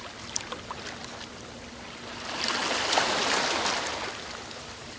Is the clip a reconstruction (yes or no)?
no